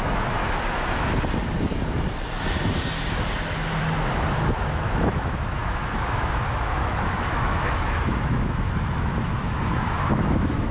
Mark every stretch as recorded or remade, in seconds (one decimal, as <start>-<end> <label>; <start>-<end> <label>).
0.0-0.4 remade; 0.4-3.8 recorded; 3.8-10.7 remade